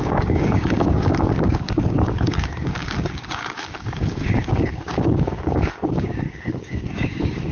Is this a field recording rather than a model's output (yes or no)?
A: no